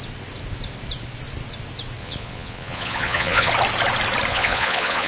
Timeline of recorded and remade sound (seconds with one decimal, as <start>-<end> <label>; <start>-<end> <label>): 0.0-2.0 recorded; 2.0-3.5 remade; 3.5-4.3 recorded; 4.3-5.1 remade